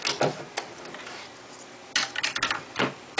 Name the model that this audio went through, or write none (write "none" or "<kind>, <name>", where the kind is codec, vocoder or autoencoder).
none